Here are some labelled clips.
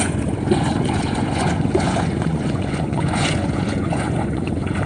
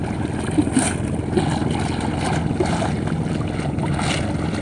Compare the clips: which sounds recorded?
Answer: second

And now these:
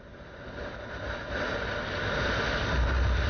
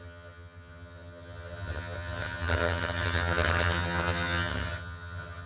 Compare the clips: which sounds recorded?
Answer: first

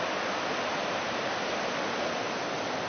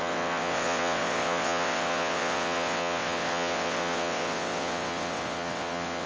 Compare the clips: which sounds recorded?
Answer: first